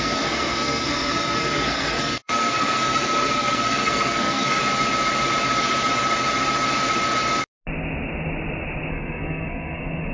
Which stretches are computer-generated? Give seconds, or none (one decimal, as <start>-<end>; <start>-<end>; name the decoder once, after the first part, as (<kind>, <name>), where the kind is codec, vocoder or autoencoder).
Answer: 0.0-4.6 (codec, SNAC); 8.9-10.1